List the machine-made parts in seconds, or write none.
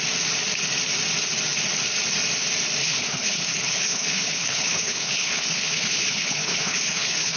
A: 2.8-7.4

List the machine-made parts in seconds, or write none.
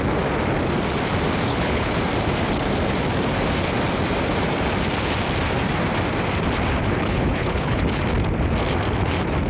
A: 1.5-2.0; 6.8-8.0